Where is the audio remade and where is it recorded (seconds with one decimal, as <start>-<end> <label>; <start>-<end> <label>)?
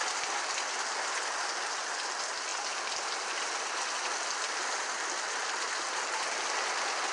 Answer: 0.0-7.1 recorded